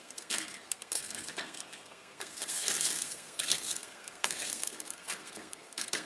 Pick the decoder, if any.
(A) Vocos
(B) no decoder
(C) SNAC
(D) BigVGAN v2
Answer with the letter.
C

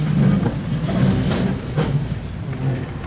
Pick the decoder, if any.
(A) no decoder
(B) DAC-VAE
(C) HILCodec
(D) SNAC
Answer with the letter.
A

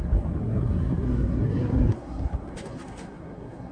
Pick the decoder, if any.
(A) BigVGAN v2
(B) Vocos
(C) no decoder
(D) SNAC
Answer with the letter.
D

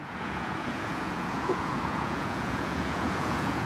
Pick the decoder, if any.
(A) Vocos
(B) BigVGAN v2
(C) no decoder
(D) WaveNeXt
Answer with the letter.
A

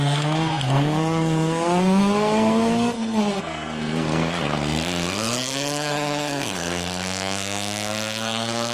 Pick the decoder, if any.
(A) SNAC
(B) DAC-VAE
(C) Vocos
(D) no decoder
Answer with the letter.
A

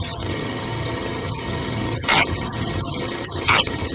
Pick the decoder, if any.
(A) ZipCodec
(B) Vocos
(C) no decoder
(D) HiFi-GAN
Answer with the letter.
D